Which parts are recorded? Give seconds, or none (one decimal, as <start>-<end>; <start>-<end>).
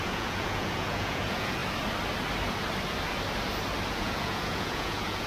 1.6-3.9